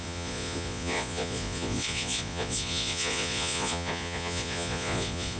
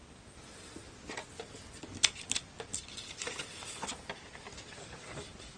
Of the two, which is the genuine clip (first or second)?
second